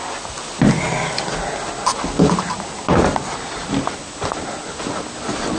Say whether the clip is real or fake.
real